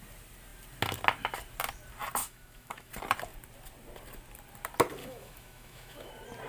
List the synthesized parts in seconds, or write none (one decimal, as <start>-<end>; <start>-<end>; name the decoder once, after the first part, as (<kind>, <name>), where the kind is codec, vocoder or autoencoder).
2.2-2.9 (autoencoder, DAC-VAE); 5.0-6.1